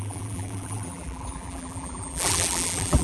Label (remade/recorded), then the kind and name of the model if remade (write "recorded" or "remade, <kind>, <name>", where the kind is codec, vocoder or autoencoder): remade, vocoder, BigVGAN v2